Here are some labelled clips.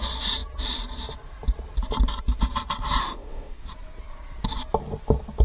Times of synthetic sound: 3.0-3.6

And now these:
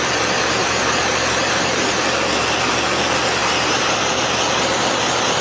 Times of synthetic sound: 0.6-2.0; 3.4-4.0

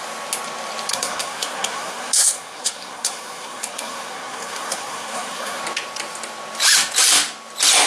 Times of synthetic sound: 0.9-5.6